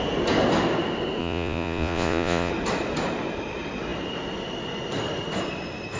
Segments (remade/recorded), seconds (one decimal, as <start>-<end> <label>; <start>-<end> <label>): 0.0-1.2 recorded; 1.2-2.5 remade; 2.5-6.0 recorded